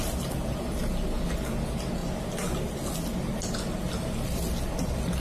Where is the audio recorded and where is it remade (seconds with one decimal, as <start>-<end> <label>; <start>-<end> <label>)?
0.0-5.2 recorded